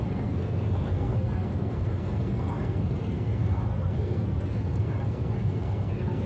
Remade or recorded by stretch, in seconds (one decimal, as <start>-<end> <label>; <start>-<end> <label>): 0.0-6.3 remade